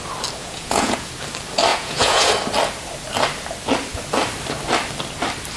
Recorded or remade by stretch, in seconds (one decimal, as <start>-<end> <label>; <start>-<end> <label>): 0.0-0.4 recorded; 0.4-1.1 remade; 1.1-1.7 recorded; 1.7-2.3 remade; 2.3-5.6 recorded